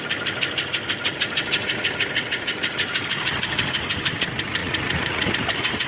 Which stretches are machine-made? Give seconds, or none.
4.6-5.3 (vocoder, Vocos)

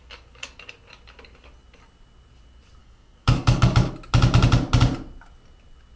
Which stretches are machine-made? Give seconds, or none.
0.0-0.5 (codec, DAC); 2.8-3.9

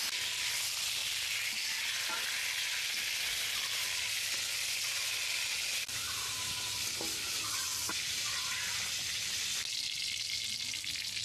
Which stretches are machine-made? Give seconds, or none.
1.0-1.8 (vocoder, BigVGAN v2); 7.7-8.2

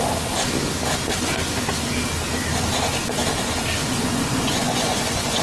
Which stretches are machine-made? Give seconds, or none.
3.8-5.4 (vocoder, Vocos)

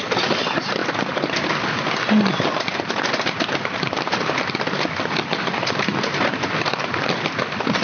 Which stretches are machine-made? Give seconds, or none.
0.0-0.8 (vocoder, BigVGAN v2); 2.3-5.9; 6.8-7.8

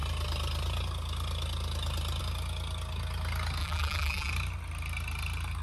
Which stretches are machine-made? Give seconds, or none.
3.6-4.3 (vocoder, BigVGAN v2)

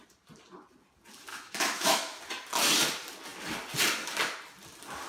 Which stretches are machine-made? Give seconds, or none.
1.3-2.2 (autoencoder, DAC-VAE)